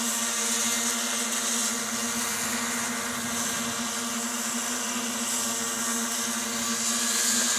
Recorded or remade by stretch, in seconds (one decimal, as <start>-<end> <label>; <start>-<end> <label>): 0.0-7.6 recorded